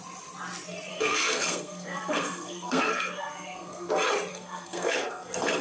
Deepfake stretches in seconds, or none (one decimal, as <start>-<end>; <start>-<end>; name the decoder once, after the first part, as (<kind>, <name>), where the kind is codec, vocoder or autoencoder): 0.9-3.9 (codec, SNAC); 4.3-5.6

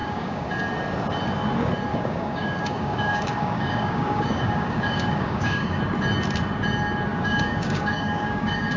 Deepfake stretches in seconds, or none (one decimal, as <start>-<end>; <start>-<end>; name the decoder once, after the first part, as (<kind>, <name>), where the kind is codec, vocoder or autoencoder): 0.0-0.5 (codec, DAC); 1.9-5.8; 7.1-8.8

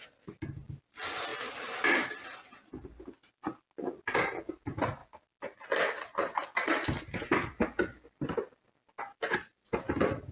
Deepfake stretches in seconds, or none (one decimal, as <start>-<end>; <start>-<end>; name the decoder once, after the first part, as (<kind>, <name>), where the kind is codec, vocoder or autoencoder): none

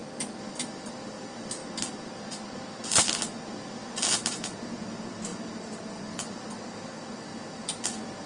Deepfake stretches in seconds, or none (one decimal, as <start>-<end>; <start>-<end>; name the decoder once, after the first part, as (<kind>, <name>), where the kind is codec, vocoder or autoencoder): 0.0-1.6 (vocoder, BigVGAN v2); 3.5-8.3

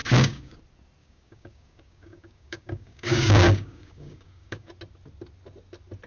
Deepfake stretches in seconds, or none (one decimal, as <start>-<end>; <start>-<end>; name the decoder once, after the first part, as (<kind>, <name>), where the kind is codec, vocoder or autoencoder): 0.0-0.6 (codec, DAC); 1.0-4.7

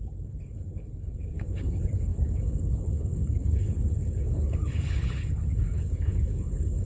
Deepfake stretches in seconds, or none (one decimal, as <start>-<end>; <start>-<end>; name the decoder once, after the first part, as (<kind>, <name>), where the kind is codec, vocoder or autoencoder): 0.0-6.9 (codec, HILCodec)

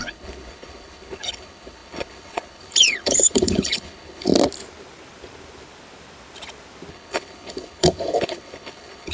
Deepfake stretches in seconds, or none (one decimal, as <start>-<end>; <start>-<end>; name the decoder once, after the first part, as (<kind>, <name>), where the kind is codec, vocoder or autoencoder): 0.0-4.3 (codec, HILCodec); 6.9-9.1